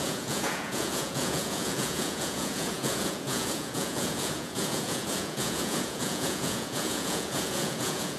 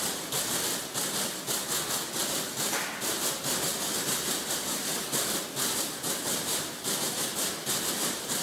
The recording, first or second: second